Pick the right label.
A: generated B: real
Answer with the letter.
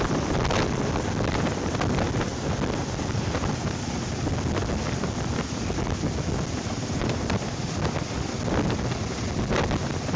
B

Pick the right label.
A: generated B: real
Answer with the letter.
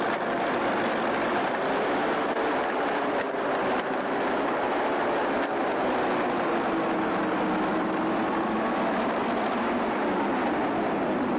B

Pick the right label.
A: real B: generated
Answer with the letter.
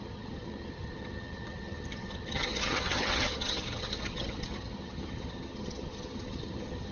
B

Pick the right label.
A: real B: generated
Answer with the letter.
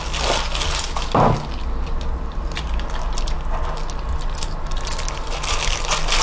A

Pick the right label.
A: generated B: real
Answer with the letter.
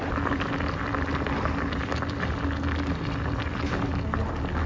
B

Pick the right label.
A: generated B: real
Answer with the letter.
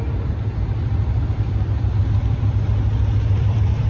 A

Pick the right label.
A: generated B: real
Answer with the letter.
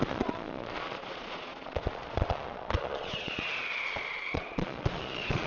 A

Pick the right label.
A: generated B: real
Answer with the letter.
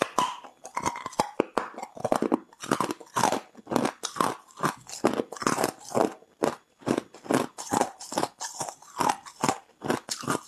B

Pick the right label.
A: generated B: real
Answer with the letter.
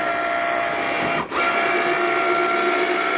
B